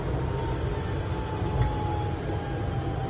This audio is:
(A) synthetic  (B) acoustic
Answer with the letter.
B